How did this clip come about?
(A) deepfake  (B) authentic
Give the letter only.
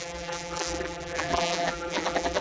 A